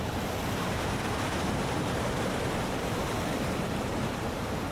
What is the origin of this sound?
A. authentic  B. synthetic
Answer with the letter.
B